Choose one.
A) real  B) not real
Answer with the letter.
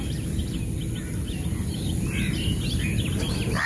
A